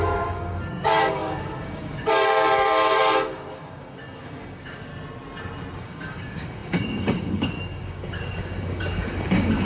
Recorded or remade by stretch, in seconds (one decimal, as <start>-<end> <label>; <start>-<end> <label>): 0.0-4.9 remade; 4.9-5.8 recorded; 5.8-9.7 remade